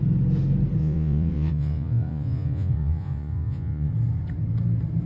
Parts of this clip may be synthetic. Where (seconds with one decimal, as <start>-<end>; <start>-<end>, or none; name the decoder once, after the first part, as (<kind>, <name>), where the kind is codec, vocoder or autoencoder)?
0.8-3.9 (vocoder, Vocos)